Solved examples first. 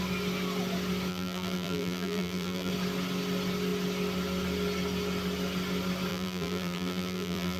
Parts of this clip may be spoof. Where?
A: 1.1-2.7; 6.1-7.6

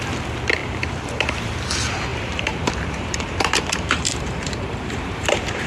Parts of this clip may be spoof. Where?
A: 0.6-1.5; 2.1-5.7

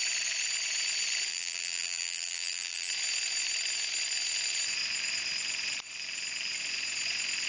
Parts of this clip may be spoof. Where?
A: 1.3-2.9